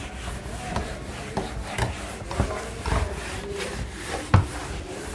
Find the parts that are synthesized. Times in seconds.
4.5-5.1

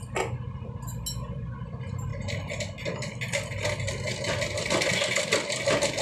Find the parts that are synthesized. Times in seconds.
none

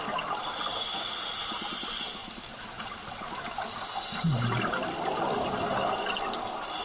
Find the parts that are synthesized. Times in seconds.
none

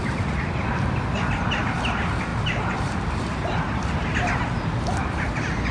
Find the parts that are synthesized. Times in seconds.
2.3-3.0

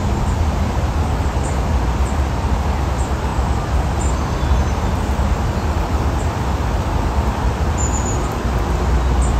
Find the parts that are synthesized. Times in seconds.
none

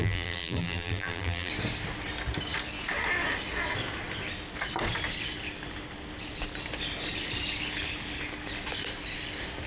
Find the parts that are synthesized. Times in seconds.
0.0-1.5